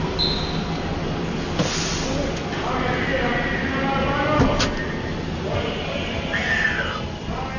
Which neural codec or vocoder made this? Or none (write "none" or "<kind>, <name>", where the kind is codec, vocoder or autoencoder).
none